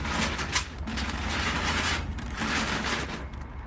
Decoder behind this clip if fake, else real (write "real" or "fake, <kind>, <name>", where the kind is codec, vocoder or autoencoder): real